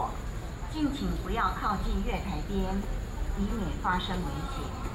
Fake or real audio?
real